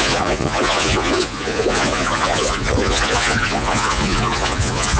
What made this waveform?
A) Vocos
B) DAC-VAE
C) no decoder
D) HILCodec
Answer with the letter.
A